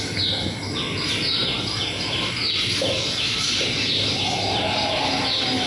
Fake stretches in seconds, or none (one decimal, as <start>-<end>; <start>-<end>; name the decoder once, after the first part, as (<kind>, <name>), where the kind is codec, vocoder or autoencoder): none

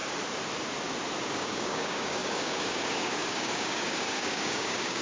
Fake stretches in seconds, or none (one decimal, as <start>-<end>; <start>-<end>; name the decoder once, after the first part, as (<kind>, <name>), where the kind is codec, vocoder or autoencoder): 1.2-5.0 (codec, DAC)

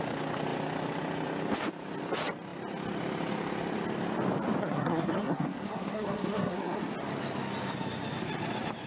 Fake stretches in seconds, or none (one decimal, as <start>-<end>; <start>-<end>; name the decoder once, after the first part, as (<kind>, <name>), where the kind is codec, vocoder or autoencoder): 4.6-6.9 (codec, SNAC)

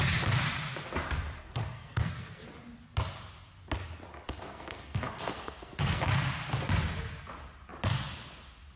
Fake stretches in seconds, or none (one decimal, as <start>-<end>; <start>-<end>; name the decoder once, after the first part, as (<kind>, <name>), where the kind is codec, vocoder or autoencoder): 1.4-2.4 (codec, SNAC); 4.1-6.1

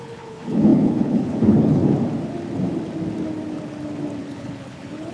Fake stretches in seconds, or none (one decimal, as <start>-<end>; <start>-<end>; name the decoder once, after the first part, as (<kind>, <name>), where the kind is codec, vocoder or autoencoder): 0.0-1.8 (codec, HILCodec); 4.2-5.1

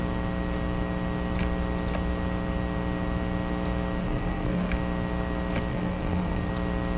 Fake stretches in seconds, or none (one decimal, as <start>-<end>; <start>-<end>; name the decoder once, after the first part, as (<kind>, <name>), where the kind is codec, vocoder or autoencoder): 4.0-4.7 (codec, SNAC); 5.7-6.5

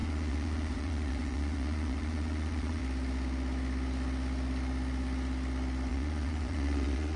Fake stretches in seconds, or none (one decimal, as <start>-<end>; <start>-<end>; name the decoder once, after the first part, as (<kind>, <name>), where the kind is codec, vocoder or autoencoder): 0.0-2.8 (vocoder, Vocos); 5.9-7.2